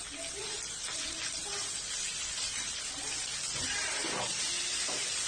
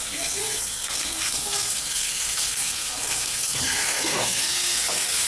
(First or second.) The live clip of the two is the first